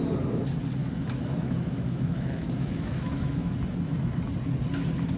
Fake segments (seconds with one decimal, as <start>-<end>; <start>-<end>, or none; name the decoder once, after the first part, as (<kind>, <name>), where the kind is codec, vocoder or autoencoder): 0.8-3.5 (autoencoder, DAC-VAE)